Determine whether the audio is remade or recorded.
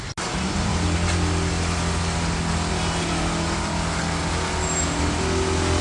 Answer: recorded